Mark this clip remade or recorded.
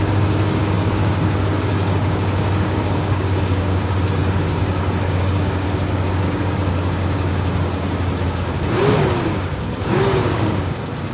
remade